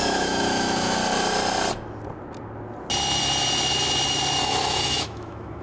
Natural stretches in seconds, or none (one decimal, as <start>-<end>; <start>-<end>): 1.0-4.4